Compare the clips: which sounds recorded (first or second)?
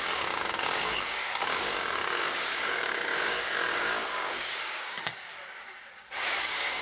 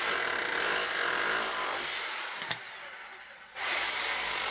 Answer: second